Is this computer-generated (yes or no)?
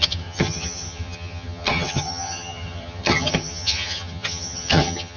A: yes